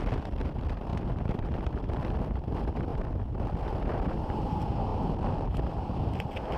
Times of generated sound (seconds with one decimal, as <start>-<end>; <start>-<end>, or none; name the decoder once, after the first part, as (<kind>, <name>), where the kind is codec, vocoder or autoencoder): 0.0-0.9 (vocoder, BigVGAN v2); 1.4-2.9; 4.1-6.6